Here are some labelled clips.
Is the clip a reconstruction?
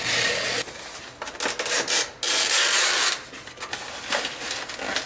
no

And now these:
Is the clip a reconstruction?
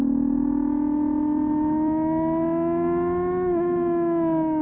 no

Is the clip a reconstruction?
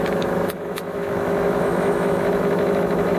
yes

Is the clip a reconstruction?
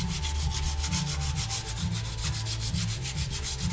no